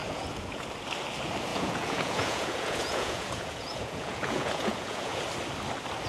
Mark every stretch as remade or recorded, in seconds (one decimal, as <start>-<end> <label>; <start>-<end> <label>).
0.0-0.7 remade; 0.7-1.5 recorded; 1.5-5.2 remade; 5.2-6.1 recorded